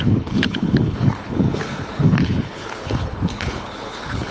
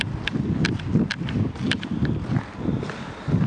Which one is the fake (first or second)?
first